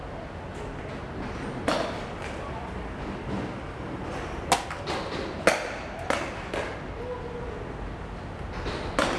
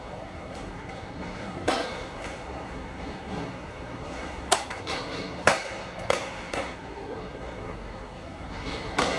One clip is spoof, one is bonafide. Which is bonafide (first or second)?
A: first